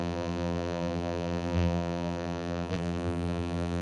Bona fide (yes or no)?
no